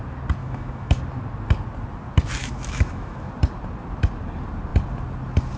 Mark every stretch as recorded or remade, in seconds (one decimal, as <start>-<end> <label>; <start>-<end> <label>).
0.0-0.4 recorded; 0.4-1.0 remade; 1.0-2.4 recorded; 2.4-3.3 remade; 3.3-5.6 recorded